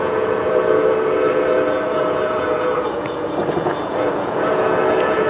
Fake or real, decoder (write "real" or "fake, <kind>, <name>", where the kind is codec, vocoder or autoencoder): fake, vocoder, Vocos